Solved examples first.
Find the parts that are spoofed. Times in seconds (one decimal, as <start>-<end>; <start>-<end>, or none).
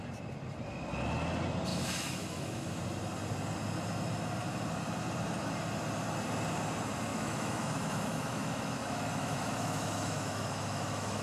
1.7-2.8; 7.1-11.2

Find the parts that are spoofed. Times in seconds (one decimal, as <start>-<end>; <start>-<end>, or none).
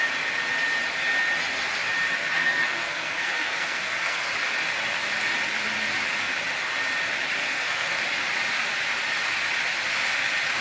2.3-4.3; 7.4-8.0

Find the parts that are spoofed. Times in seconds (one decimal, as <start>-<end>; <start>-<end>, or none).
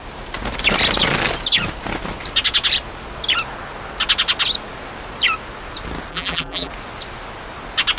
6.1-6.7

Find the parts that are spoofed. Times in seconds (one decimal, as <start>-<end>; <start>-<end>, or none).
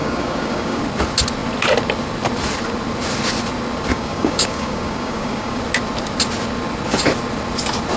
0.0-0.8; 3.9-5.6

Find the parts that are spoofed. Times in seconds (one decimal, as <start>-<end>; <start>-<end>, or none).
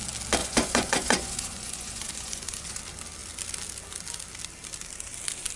0.4-2.8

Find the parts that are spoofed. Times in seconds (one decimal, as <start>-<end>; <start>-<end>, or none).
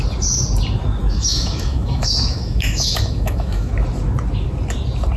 1.0-3.7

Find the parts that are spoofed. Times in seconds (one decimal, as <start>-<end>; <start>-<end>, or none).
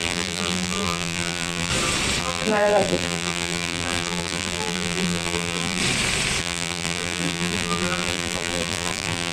0.0-1.7; 2.2-5.8; 6.4-9.3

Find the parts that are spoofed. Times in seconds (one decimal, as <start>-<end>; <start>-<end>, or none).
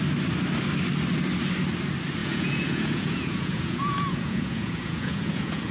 2.2-5.7